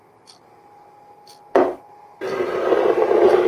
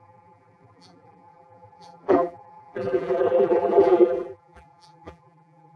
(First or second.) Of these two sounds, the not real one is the second